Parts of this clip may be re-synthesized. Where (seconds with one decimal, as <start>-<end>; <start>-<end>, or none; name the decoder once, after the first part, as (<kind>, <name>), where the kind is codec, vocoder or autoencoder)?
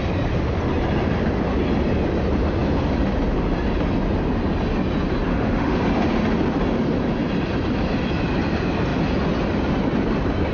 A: 5.3-5.8 (autoencoder, DAC-VAE)